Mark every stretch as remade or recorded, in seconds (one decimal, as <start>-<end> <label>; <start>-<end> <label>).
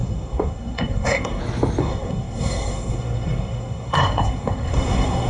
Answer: 0.0-1.4 remade; 1.4-1.8 recorded; 1.8-5.3 remade